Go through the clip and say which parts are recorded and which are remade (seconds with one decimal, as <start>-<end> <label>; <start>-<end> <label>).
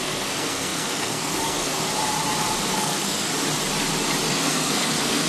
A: 0.0-1.9 remade; 1.9-2.7 recorded; 2.7-3.3 remade; 3.3-4.3 recorded; 4.3-5.3 remade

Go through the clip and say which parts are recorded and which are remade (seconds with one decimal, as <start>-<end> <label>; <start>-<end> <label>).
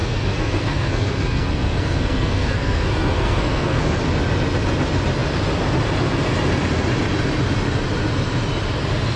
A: 0.0-3.8 remade; 3.8-9.2 recorded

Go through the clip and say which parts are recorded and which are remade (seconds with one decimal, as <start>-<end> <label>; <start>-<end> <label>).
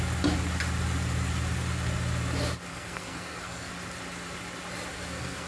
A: 0.0-2.7 recorded; 2.7-3.7 remade; 3.7-4.9 recorded; 4.9-5.5 remade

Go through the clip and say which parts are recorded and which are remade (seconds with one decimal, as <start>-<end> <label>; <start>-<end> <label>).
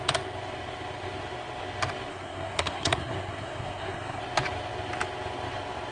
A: 0.0-2.1 recorded; 2.1-4.2 remade; 4.2-5.9 recorded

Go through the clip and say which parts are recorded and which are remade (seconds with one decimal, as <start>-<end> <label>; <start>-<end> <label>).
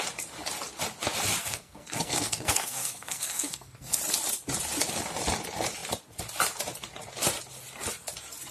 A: 0.0-1.4 recorded; 1.4-4.0 remade; 4.0-8.5 recorded